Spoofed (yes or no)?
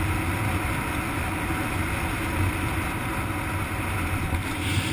no